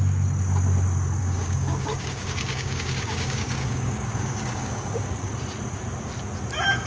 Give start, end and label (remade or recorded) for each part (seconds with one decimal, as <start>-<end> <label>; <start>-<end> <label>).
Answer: 0.0-1.2 recorded; 1.2-5.3 remade; 5.3-6.9 recorded